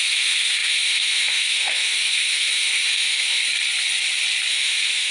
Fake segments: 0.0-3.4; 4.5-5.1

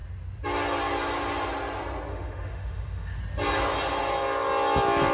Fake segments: 2.1-3.2

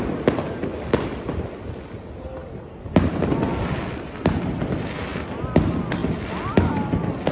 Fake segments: none